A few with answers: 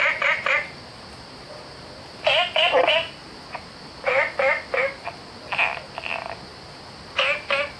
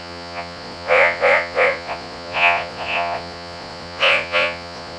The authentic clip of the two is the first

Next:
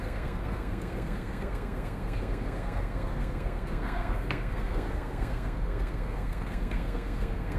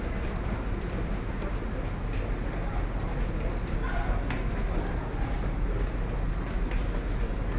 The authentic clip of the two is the second